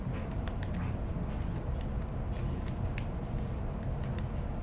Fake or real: real